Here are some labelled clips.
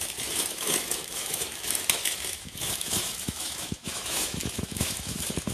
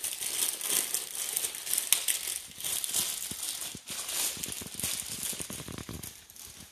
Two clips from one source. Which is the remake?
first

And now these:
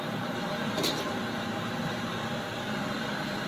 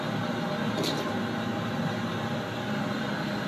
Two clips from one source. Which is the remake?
first